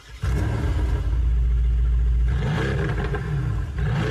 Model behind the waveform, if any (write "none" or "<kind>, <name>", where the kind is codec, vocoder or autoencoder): none